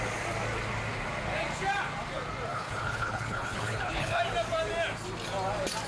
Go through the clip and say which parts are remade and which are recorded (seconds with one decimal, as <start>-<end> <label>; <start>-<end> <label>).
0.0-2.5 recorded; 2.5-4.2 remade; 4.2-5.9 recorded